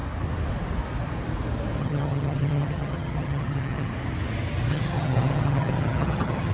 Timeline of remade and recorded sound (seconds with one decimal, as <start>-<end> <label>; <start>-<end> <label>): 0.0-1.8 recorded; 1.8-3.9 remade; 3.9-4.7 recorded; 4.7-6.5 remade